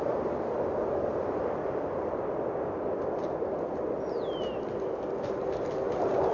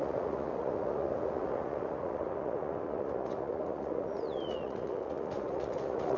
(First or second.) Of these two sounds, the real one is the first